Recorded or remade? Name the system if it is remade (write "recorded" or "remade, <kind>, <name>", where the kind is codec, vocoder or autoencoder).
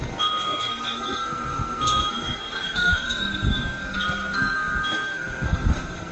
remade, codec, SNAC